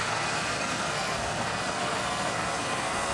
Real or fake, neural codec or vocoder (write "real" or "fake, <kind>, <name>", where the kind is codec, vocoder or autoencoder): fake, codec, SNAC